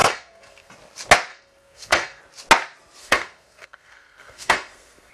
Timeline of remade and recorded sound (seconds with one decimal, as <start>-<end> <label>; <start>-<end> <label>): 0.0-0.7 remade; 0.7-1.3 recorded; 1.3-2.2 remade; 2.2-3.0 recorded; 3.0-5.1 remade